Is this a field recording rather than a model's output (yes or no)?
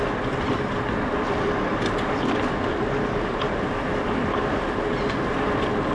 yes